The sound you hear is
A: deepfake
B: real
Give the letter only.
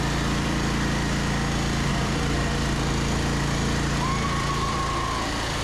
A